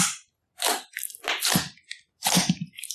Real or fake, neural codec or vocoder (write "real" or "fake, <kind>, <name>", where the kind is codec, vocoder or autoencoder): real